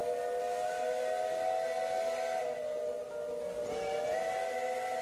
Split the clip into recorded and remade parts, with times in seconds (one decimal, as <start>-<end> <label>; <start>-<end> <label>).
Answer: 0.0-5.0 recorded